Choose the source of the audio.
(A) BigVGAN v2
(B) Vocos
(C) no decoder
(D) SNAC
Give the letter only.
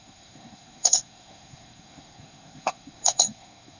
D